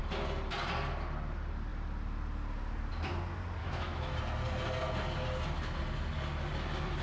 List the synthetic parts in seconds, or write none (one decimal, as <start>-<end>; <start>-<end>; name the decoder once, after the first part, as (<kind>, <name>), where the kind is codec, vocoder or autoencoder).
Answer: 3.6-4.2 (autoencoder, DAC-VAE)